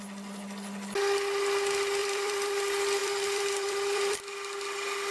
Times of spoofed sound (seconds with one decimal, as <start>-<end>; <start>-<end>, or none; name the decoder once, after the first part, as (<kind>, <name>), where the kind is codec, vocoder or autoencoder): 2.0-2.6 (vocoder, BigVGAN v2); 3.0-4.2